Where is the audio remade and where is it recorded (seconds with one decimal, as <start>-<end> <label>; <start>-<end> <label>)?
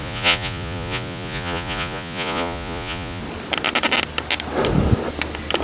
0.0-3.2 remade; 3.2-5.6 recorded